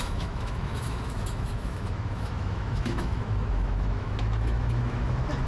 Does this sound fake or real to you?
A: fake